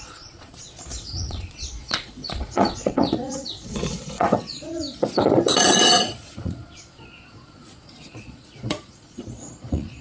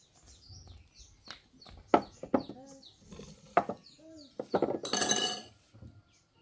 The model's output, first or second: first